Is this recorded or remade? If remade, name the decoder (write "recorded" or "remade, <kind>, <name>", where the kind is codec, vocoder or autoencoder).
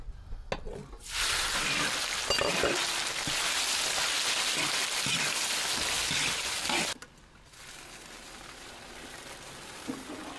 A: recorded